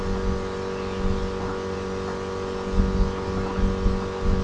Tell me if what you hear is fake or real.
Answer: real